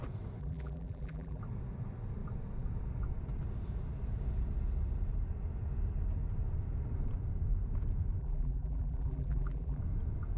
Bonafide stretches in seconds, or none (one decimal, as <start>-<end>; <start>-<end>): 0.0-0.4; 1.4-8.2; 9.8-10.4